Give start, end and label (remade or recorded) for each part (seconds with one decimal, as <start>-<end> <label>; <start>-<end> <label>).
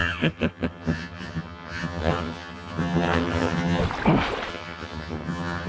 0.0-3.8 remade; 3.8-4.5 recorded; 4.5-5.7 remade